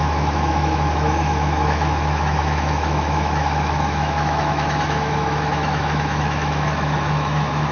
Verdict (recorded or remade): remade